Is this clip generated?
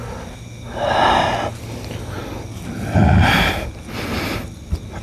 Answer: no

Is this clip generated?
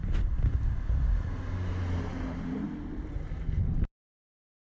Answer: no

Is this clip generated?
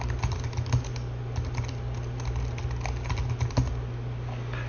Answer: no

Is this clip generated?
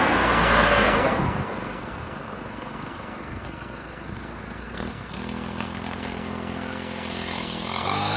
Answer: yes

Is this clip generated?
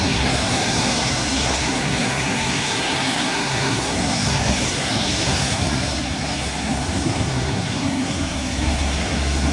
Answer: yes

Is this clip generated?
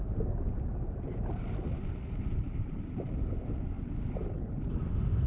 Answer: no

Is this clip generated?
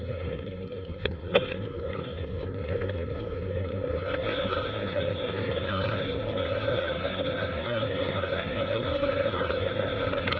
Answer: yes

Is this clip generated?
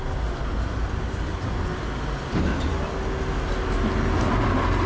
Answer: no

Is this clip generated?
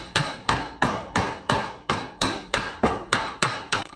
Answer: yes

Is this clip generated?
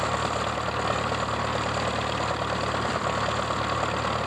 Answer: no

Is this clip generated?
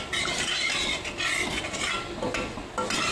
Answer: no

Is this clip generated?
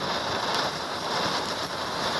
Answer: no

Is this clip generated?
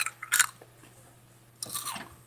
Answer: no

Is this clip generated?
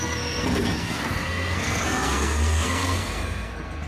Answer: yes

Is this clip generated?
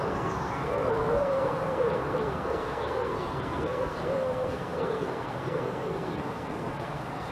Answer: yes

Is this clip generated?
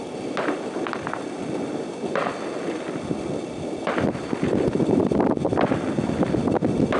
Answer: no